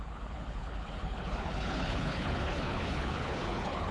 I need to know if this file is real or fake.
fake